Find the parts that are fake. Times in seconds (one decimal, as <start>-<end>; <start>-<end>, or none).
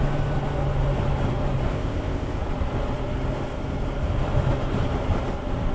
1.7-2.4